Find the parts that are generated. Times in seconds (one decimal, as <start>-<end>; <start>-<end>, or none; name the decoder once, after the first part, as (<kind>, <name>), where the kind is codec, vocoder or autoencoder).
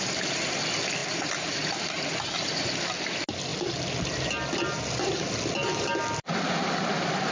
1.0-2.1 (vocoder, BigVGAN v2)